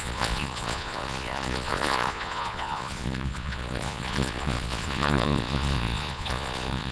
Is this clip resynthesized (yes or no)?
yes